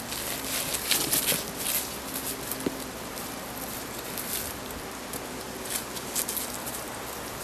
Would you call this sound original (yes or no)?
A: yes